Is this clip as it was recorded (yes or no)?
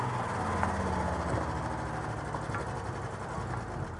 yes